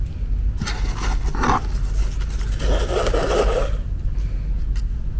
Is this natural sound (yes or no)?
yes